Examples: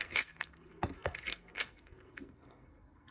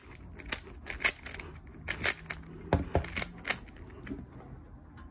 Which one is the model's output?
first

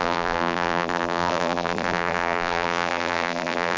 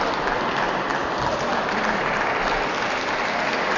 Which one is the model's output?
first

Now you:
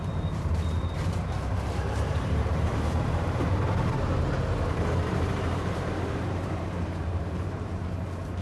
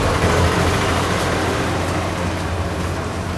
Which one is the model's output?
first